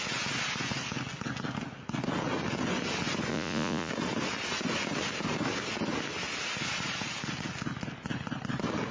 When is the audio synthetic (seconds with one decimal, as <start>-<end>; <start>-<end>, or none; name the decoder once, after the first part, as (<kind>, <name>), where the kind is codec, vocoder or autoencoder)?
3.3-3.9 (vocoder, Vocos)